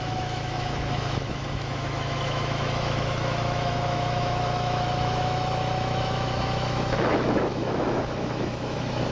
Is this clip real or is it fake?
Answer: fake